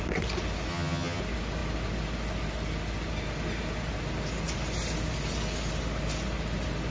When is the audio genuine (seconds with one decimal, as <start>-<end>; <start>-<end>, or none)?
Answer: 0.0-0.7; 1.2-6.9